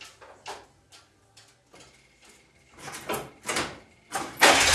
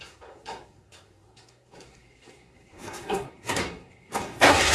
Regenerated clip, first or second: second